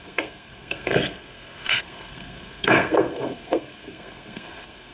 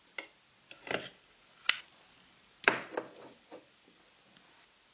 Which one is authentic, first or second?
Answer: second